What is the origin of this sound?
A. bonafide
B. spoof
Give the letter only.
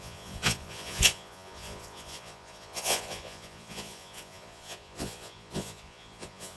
B